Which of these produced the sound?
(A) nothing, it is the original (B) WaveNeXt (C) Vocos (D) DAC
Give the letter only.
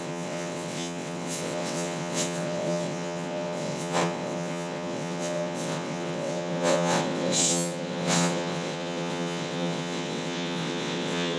B